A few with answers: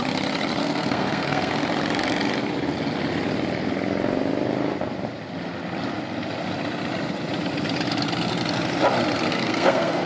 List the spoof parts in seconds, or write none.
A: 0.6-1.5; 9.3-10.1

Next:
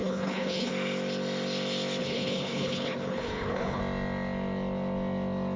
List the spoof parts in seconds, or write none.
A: 0.0-0.7; 2.0-3.8

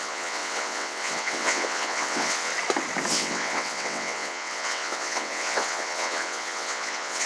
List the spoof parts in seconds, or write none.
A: 0.0-2.5; 3.1-7.3

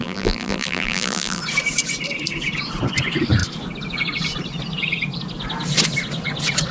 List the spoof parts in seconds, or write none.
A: 0.0-1.4